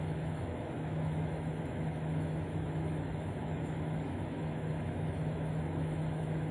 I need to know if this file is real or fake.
fake